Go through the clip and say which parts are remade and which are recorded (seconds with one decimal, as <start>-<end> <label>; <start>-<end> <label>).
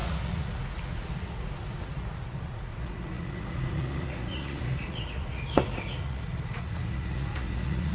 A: 0.0-7.9 remade